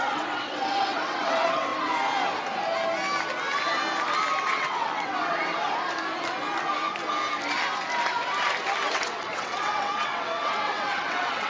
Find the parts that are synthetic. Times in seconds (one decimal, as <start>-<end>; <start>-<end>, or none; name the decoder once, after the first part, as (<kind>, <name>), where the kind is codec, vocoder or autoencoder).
0.0-1.7 (vocoder, WaveNeXt); 4.4-5.4; 8.9-11.5